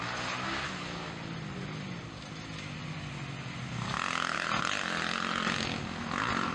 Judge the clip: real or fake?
real